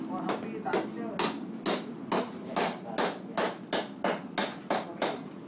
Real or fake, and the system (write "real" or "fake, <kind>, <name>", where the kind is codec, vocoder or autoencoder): real